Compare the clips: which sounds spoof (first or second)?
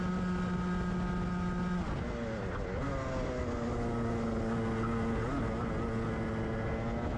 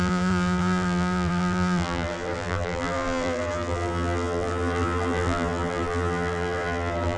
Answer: second